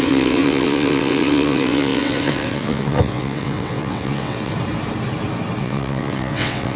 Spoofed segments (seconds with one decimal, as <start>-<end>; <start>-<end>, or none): 0.0-4.5; 5.6-6.8

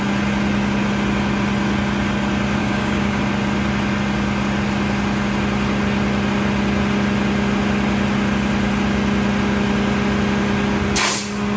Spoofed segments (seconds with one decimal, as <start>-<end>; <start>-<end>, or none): 2.6-3.2

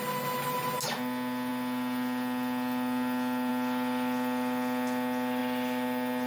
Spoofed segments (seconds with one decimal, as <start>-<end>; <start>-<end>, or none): none

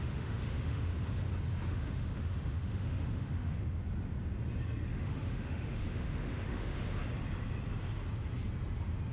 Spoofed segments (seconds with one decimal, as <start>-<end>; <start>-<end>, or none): 0.0-0.9; 1.7-3.8; 4.9-7.0

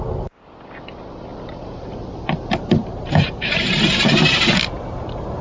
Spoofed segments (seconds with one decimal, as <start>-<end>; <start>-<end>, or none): 1.3-2.0; 2.8-4.5

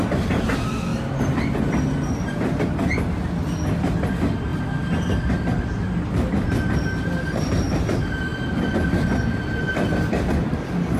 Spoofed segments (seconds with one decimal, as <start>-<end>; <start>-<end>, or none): none